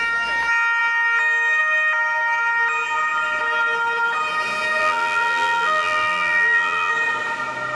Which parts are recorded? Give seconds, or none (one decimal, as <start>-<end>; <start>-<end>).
0.0-4.8; 6.9-7.7